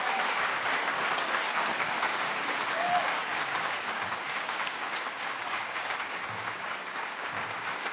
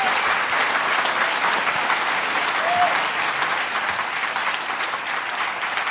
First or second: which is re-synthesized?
first